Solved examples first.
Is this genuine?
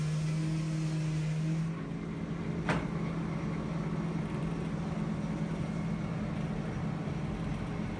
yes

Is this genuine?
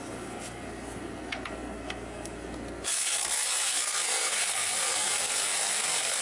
no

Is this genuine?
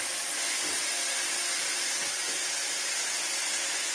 yes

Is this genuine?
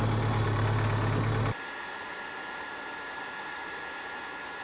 yes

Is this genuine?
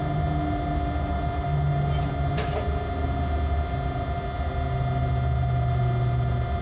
yes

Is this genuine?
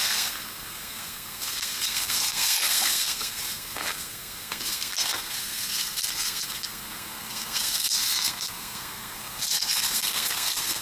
no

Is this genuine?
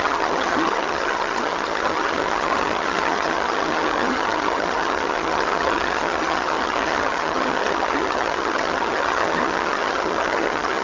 no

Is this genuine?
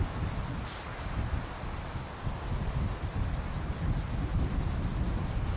yes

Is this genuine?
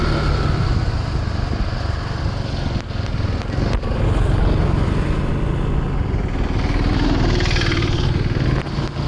yes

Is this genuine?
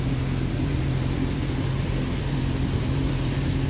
no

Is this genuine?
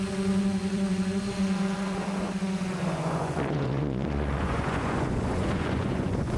no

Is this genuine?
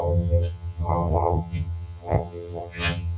no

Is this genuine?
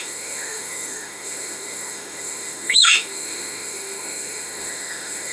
no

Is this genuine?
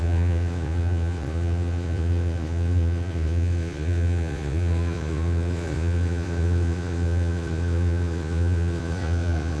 no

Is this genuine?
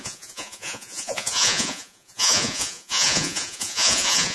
no